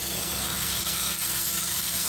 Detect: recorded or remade remade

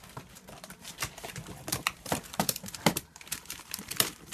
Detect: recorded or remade remade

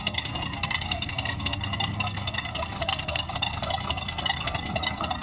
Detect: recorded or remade remade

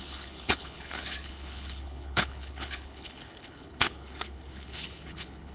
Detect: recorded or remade remade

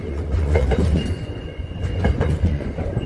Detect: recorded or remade remade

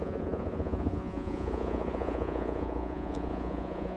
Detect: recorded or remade remade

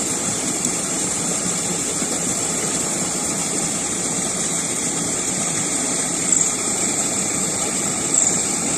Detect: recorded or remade remade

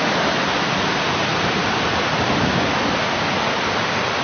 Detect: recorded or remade recorded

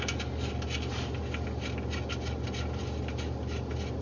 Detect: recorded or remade recorded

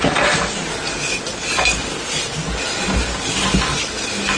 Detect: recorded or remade recorded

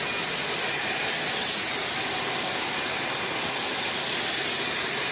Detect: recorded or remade remade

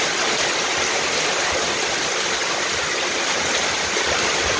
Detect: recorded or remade remade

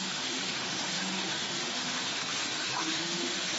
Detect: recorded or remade remade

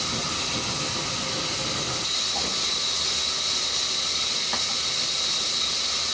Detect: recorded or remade recorded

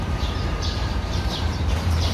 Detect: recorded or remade remade